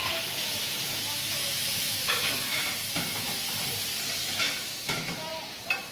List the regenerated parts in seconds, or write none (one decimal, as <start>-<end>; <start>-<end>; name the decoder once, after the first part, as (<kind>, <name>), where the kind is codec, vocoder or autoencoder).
0.0-3.5 (autoencoder, DAC-VAE); 4.2-5.3

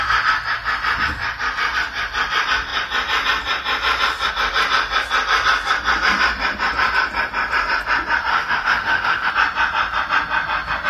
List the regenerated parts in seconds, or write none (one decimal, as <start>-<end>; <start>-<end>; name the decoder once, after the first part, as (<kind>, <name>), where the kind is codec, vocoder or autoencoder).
8.3-9.3 (autoencoder, DAC-VAE)